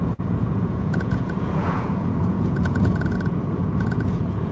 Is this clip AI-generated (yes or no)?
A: yes